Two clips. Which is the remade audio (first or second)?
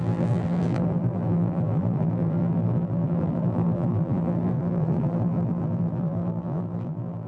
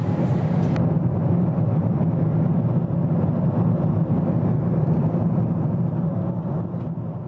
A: first